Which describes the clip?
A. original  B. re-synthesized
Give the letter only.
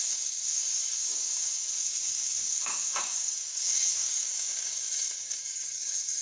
B